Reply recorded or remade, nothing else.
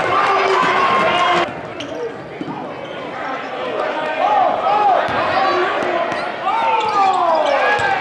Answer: recorded